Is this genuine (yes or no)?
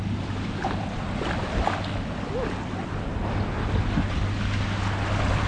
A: yes